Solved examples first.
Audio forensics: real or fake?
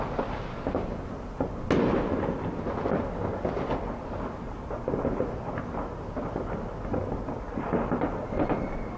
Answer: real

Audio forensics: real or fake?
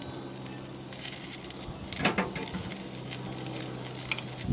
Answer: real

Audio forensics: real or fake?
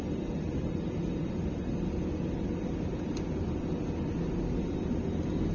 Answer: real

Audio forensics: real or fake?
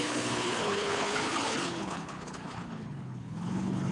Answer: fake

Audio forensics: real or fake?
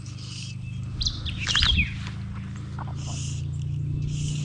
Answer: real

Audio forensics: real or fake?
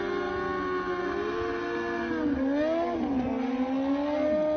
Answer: real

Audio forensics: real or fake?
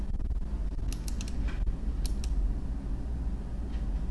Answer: real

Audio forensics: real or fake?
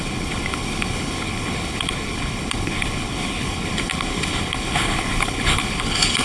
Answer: fake